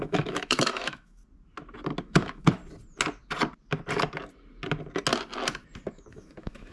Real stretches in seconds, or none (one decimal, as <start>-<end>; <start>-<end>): 1.2-2.0; 2.6-5.9